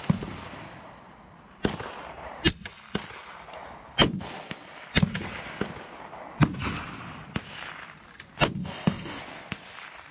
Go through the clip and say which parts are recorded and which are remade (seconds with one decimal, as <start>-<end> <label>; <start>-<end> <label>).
0.0-8.6 recorded; 8.6-9.2 remade; 9.2-10.1 recorded